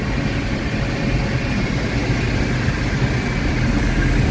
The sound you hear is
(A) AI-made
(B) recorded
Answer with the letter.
B